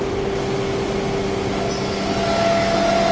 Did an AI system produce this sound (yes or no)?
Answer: no